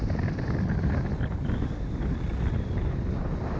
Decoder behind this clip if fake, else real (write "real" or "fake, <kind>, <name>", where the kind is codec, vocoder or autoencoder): real